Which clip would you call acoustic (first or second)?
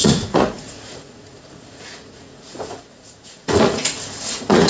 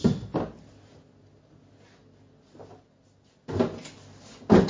second